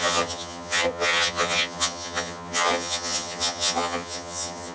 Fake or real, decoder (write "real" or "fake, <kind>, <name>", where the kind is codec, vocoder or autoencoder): fake, vocoder, HiFi-GAN